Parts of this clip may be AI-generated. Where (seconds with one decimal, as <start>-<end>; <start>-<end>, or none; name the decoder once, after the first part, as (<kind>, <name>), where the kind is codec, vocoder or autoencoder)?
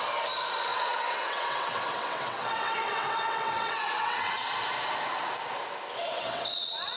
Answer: 0.7-4.5 (vocoder, WaveNeXt); 6.1-7.0